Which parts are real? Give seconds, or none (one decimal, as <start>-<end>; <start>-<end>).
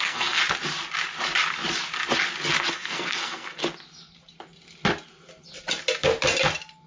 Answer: 0.4-2.7; 3.6-6.9